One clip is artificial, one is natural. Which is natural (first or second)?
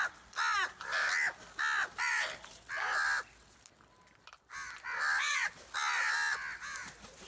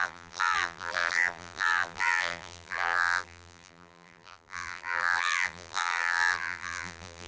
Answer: first